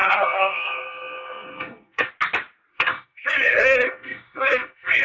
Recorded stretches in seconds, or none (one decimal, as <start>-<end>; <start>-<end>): 2.1-2.7